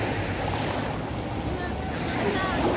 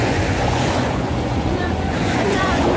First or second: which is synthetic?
second